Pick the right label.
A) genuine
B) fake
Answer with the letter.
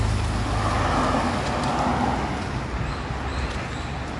A